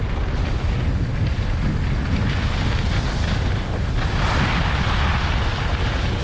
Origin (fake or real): real